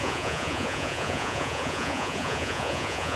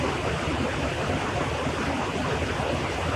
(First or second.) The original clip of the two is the second